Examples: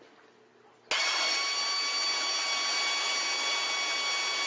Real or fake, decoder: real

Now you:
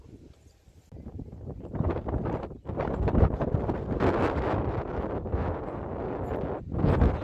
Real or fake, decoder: real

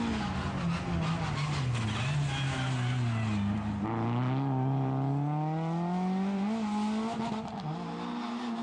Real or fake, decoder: real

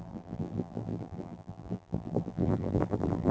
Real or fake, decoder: fake, vocoder, BigVGAN v2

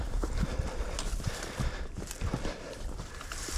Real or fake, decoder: fake, vocoder, BigVGAN v2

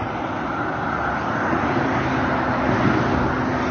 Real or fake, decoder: real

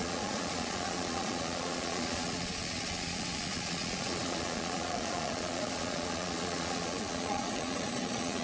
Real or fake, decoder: fake, vocoder, Vocos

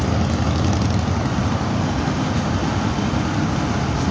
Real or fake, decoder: real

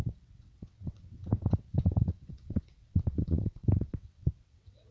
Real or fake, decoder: fake, vocoder, WaveNeXt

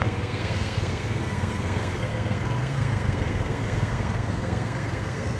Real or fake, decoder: fake, codec, SNAC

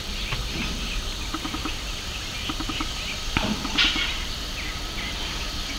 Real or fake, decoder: fake, vocoder, BigVGAN v2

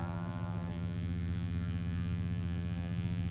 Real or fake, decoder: fake, vocoder, BigVGAN v2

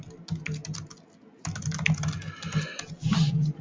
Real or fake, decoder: real